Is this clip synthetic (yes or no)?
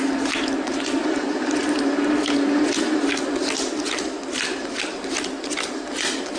no